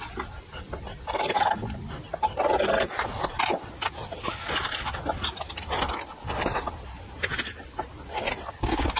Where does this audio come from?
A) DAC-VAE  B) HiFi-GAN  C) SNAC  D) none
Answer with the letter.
D